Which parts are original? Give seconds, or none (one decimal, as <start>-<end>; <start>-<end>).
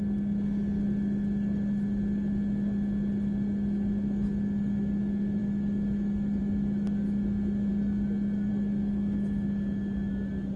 0.0-10.6